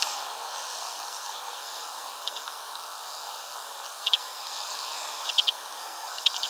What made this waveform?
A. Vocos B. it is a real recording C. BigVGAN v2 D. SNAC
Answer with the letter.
D